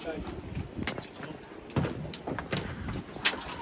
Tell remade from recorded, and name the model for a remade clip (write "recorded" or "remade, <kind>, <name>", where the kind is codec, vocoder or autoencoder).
recorded